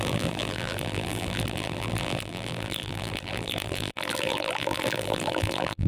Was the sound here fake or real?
fake